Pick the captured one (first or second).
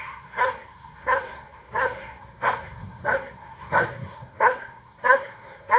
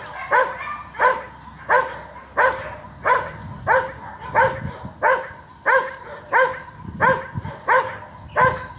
second